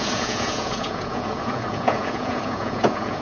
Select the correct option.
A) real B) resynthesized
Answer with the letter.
B